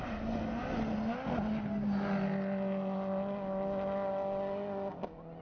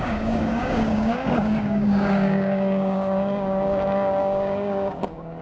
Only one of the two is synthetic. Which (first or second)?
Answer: second